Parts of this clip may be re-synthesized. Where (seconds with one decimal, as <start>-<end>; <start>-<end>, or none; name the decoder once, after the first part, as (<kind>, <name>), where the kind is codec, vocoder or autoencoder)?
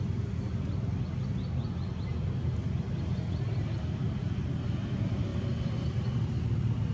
none